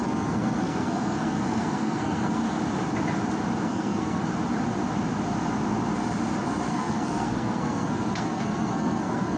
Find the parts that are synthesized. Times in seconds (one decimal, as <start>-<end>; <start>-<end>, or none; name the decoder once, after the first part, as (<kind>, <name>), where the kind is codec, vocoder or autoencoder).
0.0-2.4 (codec, SNAC); 3.6-4.2; 6.7-9.4